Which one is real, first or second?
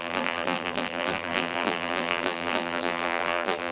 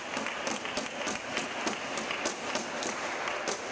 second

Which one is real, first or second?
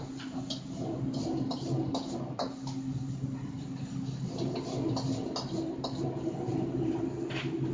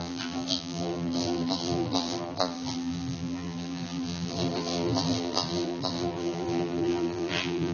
first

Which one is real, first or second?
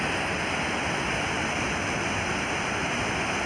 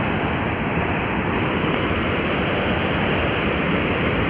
first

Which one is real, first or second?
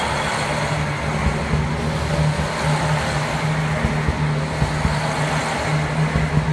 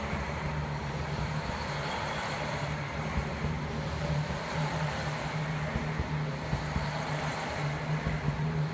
first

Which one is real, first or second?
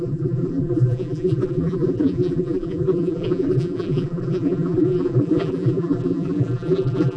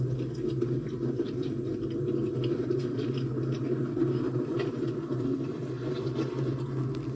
second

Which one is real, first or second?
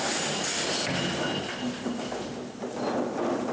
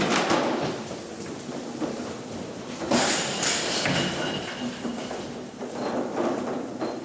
first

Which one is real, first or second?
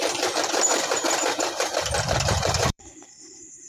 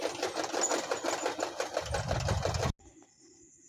second